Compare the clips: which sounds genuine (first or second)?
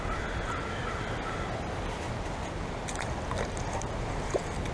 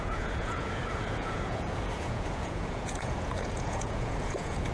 first